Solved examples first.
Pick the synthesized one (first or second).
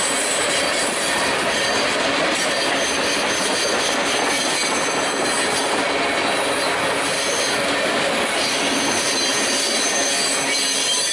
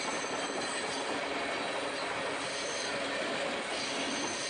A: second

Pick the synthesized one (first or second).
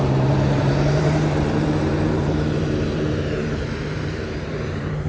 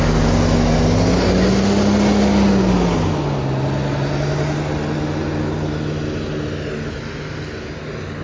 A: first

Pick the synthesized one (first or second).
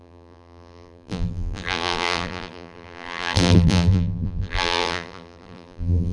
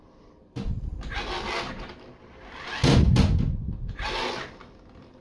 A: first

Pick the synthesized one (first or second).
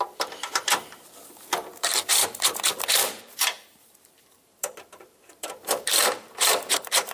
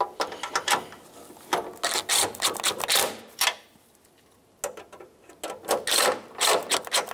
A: first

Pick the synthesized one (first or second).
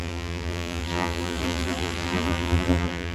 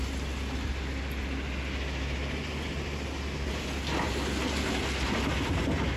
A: first